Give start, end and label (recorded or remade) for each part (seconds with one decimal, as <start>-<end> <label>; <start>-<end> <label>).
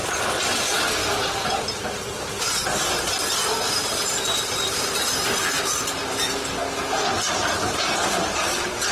0.0-0.6 recorded; 0.6-1.0 remade; 1.0-1.9 recorded; 1.9-3.4 remade; 3.4-4.5 recorded; 4.5-6.6 remade; 6.6-7.6 recorded; 7.6-8.9 remade